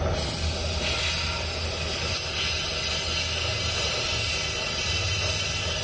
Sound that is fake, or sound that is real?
real